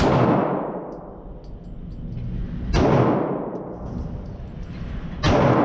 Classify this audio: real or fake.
real